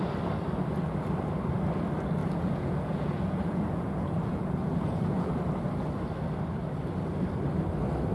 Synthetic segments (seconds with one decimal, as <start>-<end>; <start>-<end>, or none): 2.2-5.3